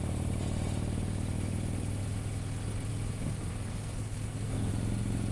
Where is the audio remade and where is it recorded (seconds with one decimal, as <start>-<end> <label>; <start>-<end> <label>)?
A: 0.0-3.5 recorded; 3.5-4.7 remade; 4.7-5.3 recorded